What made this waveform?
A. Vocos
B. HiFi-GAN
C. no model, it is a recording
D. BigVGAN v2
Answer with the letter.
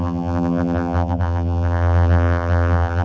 D